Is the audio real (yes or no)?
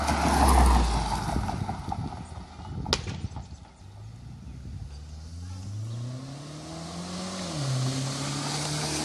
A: yes